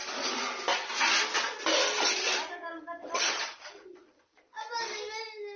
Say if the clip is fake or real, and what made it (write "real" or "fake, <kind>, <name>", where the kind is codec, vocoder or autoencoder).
real